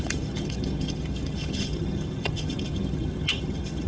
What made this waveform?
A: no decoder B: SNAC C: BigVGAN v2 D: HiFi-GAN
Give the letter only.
D